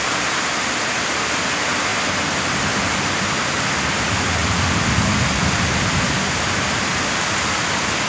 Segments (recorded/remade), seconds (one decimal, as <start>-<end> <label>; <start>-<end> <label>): 0.0-5.4 recorded; 5.4-6.0 remade; 6.0-8.1 recorded